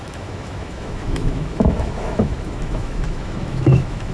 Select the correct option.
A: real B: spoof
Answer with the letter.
B